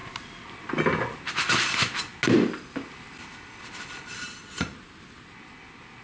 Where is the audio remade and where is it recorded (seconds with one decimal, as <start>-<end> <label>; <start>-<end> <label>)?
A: 0.0-6.0 recorded

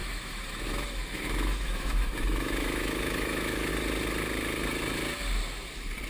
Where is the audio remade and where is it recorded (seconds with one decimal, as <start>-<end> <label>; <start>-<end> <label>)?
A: 0.0-3.7 remade; 3.7-6.1 recorded

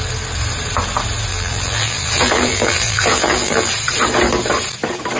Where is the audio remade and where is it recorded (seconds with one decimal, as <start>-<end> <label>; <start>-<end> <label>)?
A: 0.0-1.3 recorded; 1.3-3.7 remade; 3.7-5.2 recorded

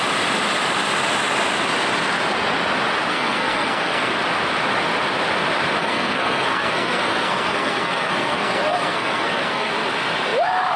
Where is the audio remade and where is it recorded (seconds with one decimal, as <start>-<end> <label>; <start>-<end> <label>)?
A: 0.0-3.1 recorded; 3.1-4.1 remade; 4.1-5.8 recorded; 5.8-9.7 remade; 9.7-10.8 recorded